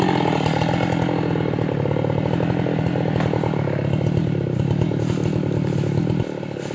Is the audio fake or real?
real